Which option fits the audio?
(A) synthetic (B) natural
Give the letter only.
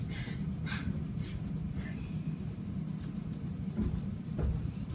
B